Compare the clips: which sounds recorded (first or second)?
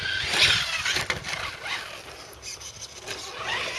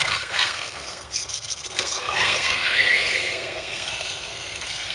first